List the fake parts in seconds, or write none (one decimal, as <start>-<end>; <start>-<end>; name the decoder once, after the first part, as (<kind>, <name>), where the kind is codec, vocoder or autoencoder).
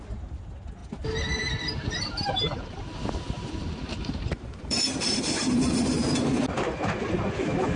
0.8-5.2 (vocoder, BigVGAN v2)